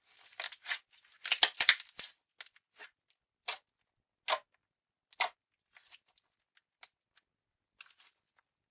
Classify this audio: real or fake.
real